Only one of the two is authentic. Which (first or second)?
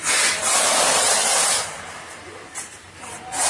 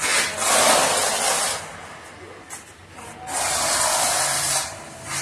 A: second